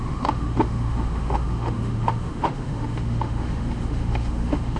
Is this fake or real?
fake